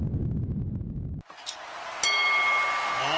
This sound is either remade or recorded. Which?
recorded